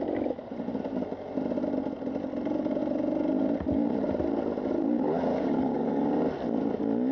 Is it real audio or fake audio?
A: real